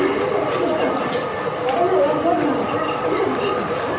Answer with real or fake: real